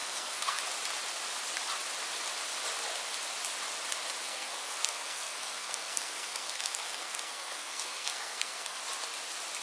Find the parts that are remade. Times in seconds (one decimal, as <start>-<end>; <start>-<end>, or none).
0.0-0.6; 4.2-8.8